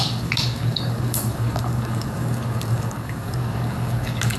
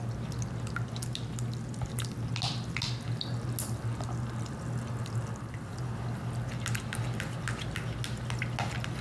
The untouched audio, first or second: second